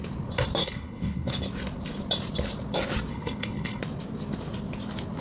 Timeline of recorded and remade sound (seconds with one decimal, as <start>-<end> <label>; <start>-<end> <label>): 0.0-0.6 recorded; 0.6-1.3 remade; 1.3-3.1 recorded; 3.1-3.8 remade; 3.8-5.2 recorded